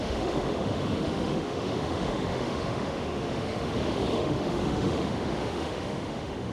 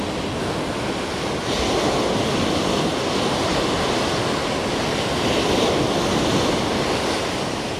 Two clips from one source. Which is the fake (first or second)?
first